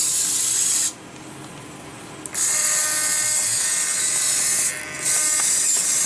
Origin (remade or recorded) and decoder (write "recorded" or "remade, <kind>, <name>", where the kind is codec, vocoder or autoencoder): recorded